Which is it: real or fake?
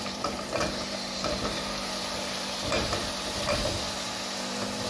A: fake